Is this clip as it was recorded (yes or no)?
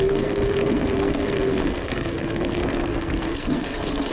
no